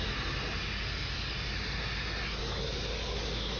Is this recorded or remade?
recorded